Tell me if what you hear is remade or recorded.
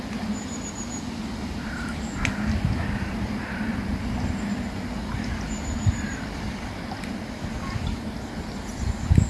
recorded